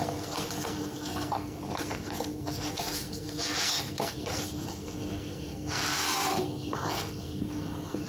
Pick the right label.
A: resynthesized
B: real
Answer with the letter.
A